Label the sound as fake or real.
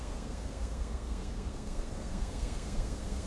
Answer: fake